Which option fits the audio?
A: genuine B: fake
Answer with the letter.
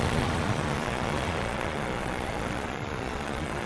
B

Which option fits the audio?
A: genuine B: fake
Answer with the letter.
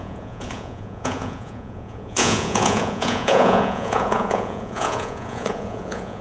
B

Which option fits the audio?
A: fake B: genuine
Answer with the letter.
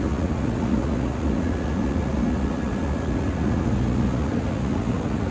A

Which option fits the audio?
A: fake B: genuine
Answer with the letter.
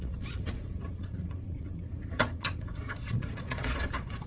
A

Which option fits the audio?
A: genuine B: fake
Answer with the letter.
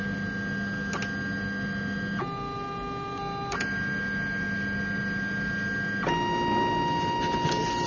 A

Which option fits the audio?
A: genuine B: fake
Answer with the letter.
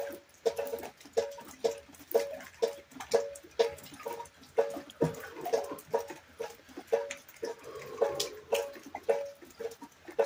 A